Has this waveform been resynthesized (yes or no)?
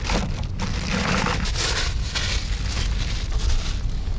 no